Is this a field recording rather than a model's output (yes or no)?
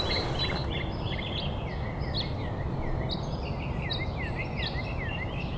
yes